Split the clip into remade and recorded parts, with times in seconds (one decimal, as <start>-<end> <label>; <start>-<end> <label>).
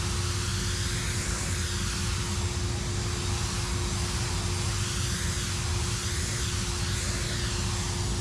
0.0-8.2 recorded